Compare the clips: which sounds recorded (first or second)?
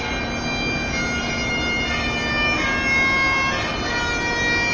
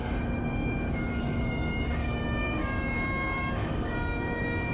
first